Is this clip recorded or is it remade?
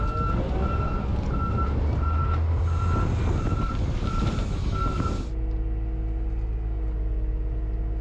recorded